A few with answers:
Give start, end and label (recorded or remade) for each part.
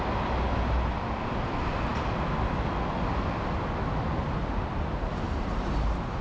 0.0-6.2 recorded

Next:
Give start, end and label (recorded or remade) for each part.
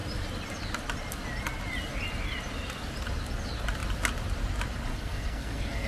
0.0-4.9 recorded; 4.9-5.9 remade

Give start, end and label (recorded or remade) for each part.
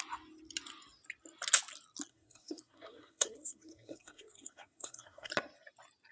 0.0-2.1 recorded; 2.1-5.3 remade; 5.3-6.1 recorded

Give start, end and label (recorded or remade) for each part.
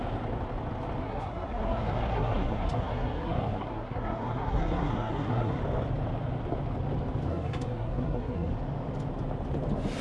0.0-1.0 recorded; 1.0-5.6 remade; 5.6-7.3 recorded; 7.3-8.5 remade; 8.5-10.0 recorded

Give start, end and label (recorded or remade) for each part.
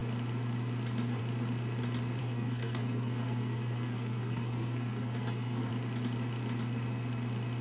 0.0-2.2 recorded; 2.2-5.7 remade; 5.7-7.6 recorded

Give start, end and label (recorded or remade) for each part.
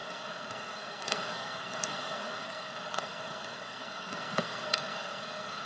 0.0-5.7 remade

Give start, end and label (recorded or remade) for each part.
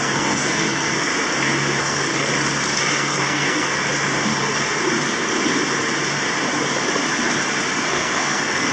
0.0-1.1 remade; 1.1-1.8 recorded; 1.8-2.3 remade; 2.3-2.8 recorded; 2.8-3.8 remade; 3.8-7.9 recorded; 7.9-8.7 remade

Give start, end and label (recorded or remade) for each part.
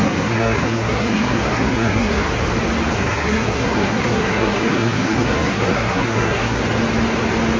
0.0-2.3 remade; 2.3-2.9 recorded; 2.9-6.6 remade; 6.6-7.6 recorded